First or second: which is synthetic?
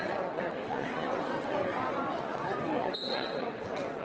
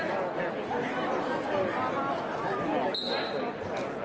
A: first